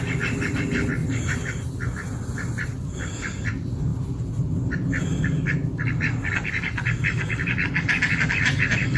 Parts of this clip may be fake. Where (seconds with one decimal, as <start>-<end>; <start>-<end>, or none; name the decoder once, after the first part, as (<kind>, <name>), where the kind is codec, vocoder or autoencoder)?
1.0-1.8 (vocoder, BigVGAN v2)